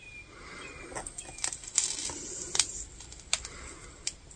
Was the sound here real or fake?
real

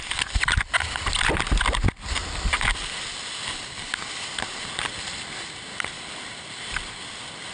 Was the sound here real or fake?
real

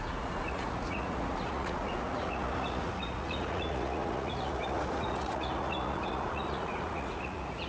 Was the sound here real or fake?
fake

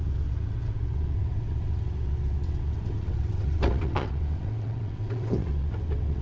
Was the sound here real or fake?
fake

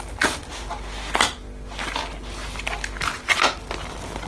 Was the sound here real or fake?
real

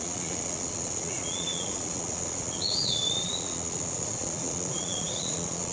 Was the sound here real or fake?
fake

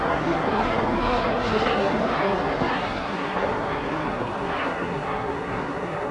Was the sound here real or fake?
fake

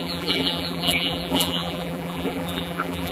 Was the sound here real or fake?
fake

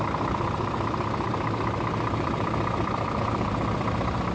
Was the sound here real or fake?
fake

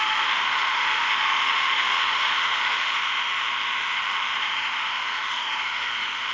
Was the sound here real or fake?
fake